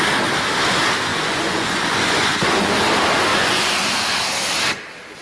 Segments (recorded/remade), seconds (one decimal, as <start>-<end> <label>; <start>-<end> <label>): 0.0-1.1 recorded; 1.1-2.7 remade; 2.7-3.3 recorded; 3.3-4.2 remade; 4.2-5.2 recorded